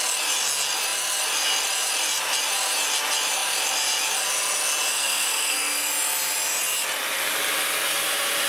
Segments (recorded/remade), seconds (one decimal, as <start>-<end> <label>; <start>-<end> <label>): 0.0-4.9 recorded; 4.9-5.9 remade; 5.9-8.5 recorded